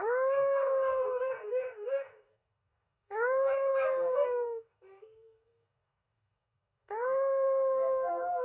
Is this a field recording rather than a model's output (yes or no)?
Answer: no